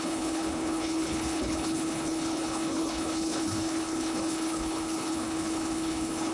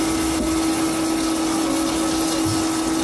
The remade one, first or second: first